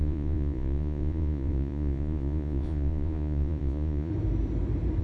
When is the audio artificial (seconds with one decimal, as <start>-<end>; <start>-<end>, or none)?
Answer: 0.0-4.1